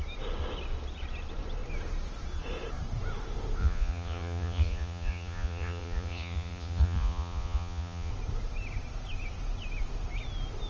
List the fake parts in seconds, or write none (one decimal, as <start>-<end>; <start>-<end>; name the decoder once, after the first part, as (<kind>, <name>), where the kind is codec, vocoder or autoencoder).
3.6-8.1 (vocoder, Vocos)